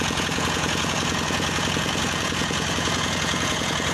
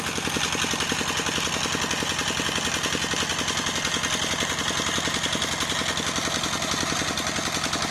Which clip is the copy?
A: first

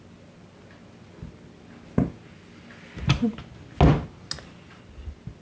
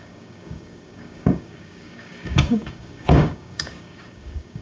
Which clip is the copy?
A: second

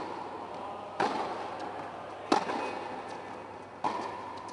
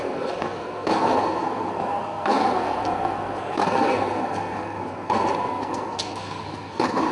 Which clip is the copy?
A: second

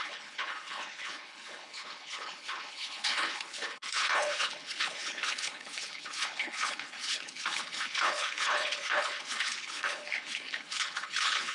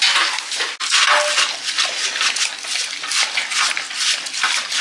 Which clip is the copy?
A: first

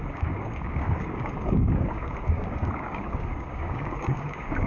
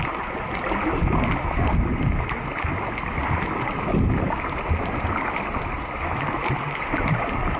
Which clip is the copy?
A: first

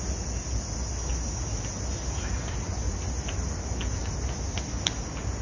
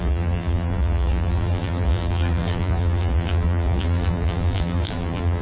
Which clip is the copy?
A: second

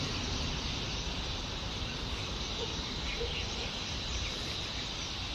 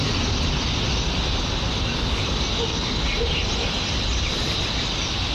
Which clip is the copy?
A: first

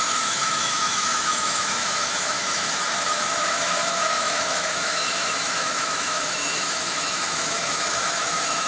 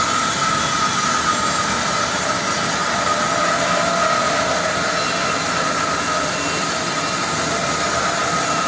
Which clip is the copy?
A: first